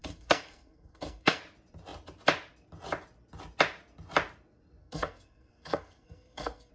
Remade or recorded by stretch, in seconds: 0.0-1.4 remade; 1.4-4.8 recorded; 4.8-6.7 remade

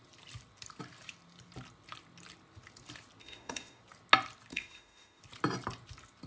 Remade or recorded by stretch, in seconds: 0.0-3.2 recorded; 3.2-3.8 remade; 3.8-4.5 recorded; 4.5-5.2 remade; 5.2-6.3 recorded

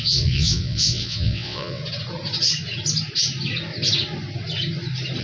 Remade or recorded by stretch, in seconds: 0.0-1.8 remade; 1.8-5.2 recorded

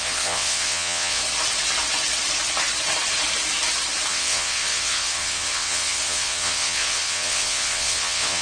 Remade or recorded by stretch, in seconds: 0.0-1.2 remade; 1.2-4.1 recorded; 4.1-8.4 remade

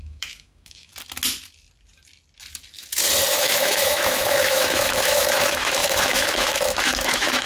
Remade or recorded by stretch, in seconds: 0.0-0.9 remade; 0.9-3.3 recorded; 3.3-7.5 remade

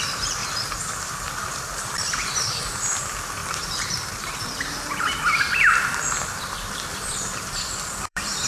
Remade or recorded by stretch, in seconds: 0.0-8.5 remade

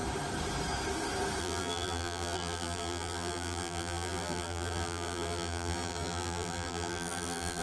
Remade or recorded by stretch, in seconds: 0.0-1.4 recorded; 1.4-7.6 remade

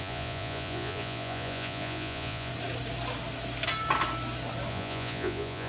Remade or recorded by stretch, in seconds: 0.0-2.5 remade; 2.5-4.7 recorded; 4.7-5.7 remade